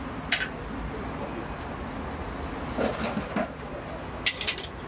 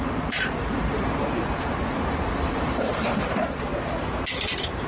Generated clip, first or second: second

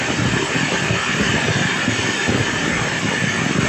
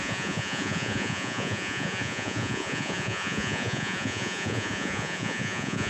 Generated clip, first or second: second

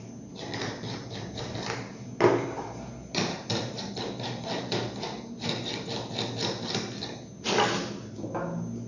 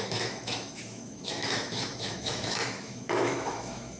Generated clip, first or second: second